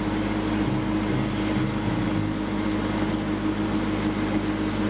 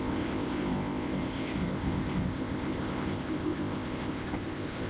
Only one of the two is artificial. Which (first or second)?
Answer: second